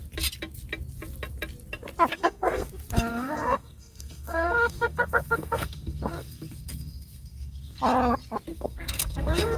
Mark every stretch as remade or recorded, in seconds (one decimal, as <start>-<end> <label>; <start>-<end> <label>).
0.0-2.1 recorded; 2.1-2.7 remade; 2.7-3.1 recorded; 3.1-7.8 remade; 7.8-8.5 recorded; 8.5-9.6 remade